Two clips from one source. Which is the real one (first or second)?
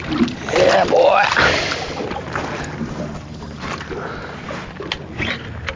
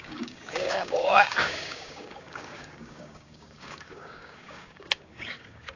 first